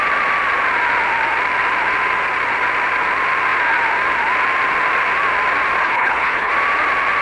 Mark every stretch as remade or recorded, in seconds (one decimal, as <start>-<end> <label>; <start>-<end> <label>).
0.0-5.8 recorded; 5.8-6.5 remade; 6.5-7.2 recorded